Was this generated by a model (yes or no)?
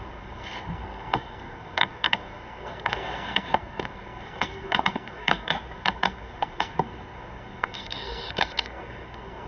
yes